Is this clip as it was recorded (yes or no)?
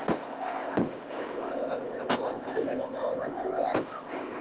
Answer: no